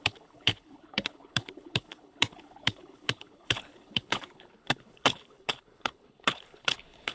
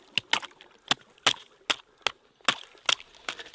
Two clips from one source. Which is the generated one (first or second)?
first